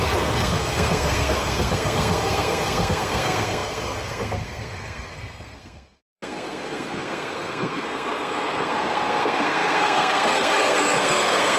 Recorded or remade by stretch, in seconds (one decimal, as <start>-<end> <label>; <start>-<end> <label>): 0.0-11.6 remade